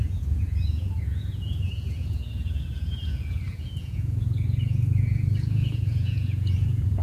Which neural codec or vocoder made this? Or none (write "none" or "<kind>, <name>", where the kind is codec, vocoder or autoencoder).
vocoder, Vocos